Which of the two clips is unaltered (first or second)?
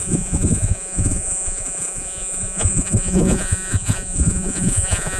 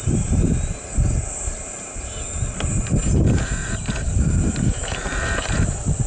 second